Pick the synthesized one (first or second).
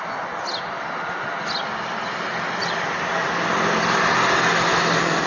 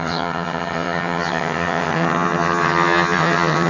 second